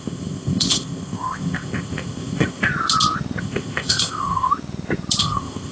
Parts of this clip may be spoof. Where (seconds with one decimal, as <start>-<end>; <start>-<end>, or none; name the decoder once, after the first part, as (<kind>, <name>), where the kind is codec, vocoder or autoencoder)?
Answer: 0.0-2.7 (codec, ZipCodec); 3.4-4.5; 5.2-5.7